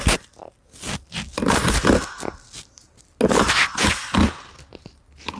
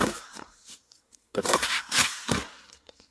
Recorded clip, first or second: first